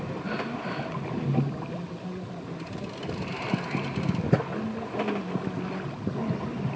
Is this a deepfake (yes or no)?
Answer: no